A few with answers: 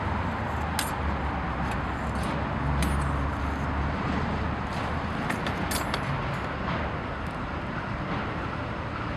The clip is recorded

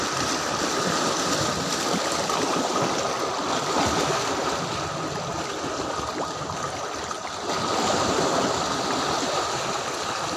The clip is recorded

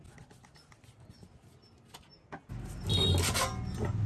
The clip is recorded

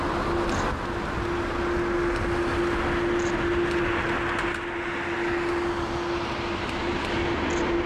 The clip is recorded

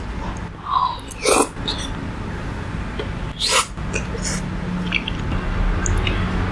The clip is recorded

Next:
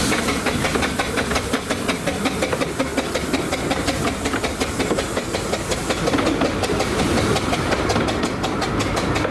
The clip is recorded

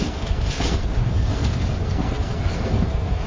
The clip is remade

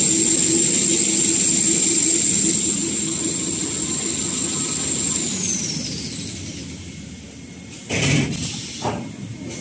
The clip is recorded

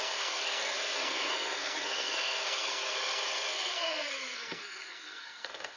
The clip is remade